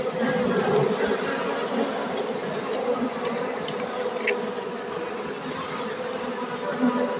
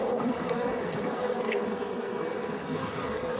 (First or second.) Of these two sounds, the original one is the first